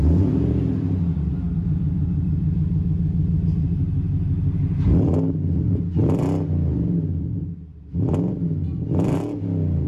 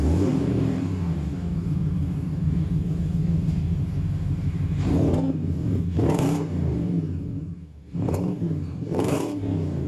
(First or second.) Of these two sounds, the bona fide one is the first